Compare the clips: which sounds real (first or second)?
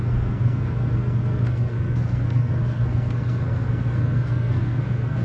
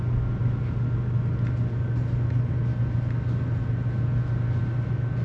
second